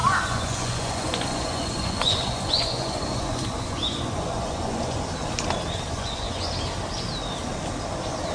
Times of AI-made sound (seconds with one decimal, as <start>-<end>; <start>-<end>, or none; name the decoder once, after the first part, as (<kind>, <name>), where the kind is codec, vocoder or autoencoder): 0.0-5.0 (vocoder, Vocos); 5.9-6.5